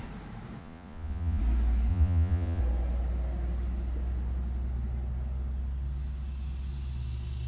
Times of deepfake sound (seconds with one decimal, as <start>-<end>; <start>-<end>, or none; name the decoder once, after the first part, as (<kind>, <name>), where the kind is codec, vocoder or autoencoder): 0.6-1.4 (vocoder, Vocos); 1.9-2.6